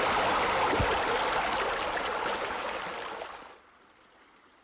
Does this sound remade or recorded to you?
recorded